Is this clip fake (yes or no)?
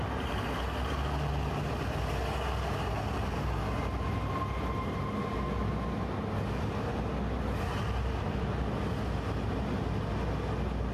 no